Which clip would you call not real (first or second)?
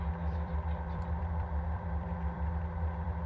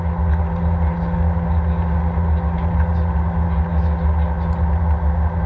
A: first